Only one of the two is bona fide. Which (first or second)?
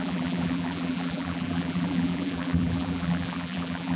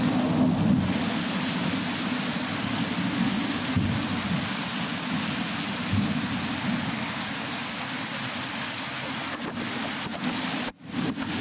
second